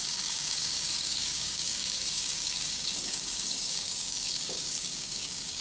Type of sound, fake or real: fake